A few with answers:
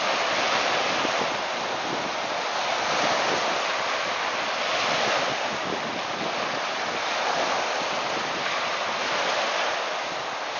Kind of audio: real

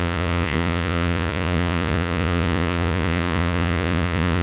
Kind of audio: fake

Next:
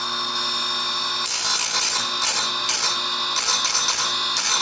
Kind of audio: real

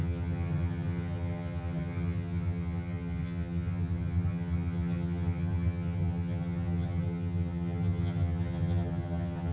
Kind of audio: fake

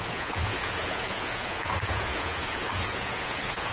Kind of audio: fake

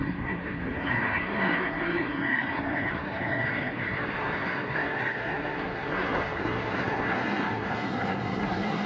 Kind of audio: fake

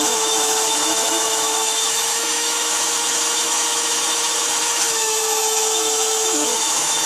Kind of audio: fake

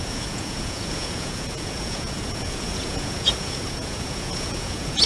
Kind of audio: fake